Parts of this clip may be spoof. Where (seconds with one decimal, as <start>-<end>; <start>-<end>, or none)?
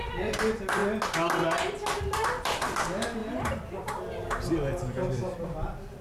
0.0-0.8; 2.0-6.0